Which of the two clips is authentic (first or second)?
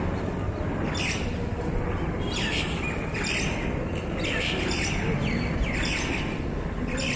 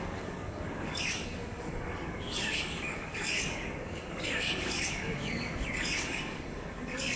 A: first